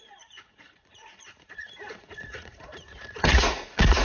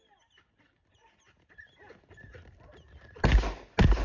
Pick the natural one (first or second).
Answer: second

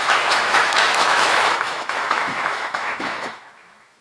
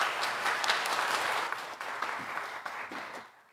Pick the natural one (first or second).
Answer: second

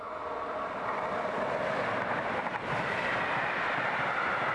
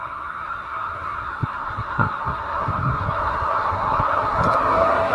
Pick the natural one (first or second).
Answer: first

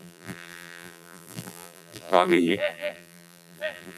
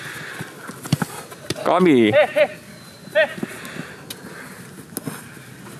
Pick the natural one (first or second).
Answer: second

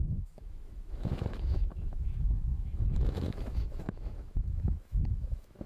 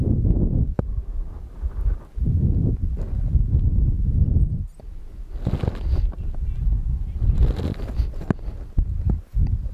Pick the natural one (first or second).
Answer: second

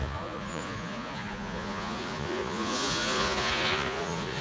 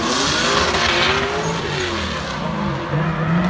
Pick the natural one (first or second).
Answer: second